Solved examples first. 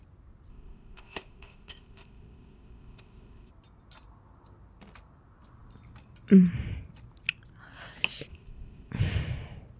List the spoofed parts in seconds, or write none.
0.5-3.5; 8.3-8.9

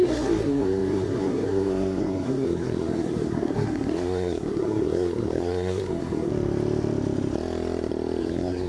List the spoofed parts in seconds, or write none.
0.0-6.3; 8.2-8.7

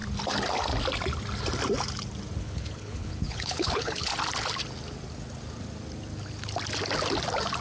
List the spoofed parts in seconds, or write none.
2.4-4.1

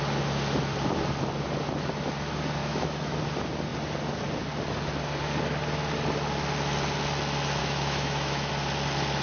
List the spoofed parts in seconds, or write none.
2.6-3.2; 7.6-8.5

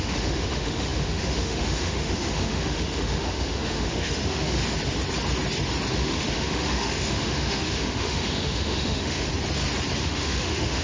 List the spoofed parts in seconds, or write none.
0.0-4.6; 5.9-9.3; 10.0-10.8

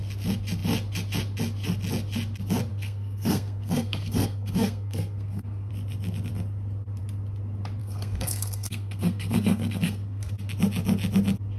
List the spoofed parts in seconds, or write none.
2.7-5.7; 7.8-10.3

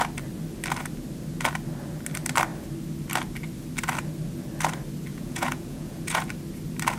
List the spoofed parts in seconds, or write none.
5.1-6.3